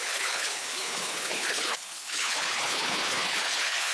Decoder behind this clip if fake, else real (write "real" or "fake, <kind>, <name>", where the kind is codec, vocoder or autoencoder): fake, codec, HILCodec